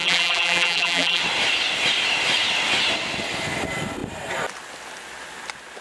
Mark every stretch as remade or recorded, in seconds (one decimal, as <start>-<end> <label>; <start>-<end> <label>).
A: 0.0-1.2 remade; 1.2-5.8 recorded